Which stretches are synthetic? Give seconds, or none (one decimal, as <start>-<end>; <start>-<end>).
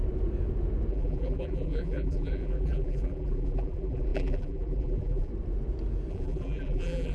0.9-5.3; 6.1-7.1